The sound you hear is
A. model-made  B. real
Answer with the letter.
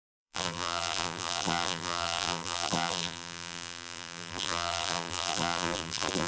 A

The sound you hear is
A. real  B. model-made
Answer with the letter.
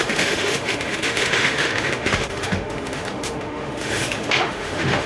B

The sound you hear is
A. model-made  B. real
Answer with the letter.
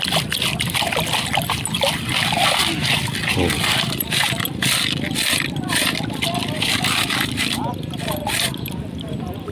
A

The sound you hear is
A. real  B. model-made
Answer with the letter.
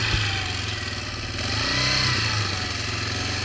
A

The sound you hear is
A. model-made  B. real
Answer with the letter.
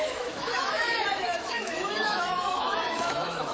A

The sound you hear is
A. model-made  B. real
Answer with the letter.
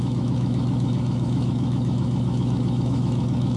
A